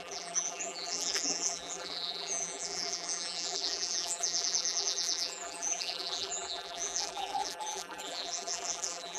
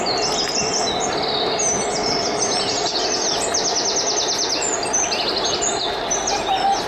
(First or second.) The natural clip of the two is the second